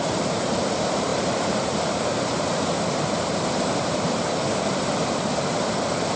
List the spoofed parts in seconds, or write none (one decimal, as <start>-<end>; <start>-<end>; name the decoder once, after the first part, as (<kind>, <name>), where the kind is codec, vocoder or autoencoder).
0.0-6.2 (vocoder, BigVGAN v2)